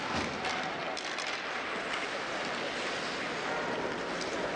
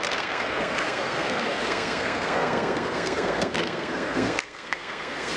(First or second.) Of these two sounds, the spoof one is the second